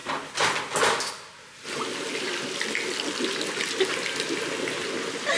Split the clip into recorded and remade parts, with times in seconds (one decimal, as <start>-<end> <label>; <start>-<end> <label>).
0.0-5.4 recorded